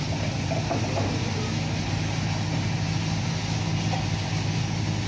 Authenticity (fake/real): real